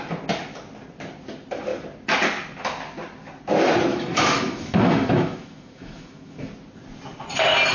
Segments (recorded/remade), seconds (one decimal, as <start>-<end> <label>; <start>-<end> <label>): 0.0-3.9 recorded; 3.9-6.5 remade; 6.5-7.7 recorded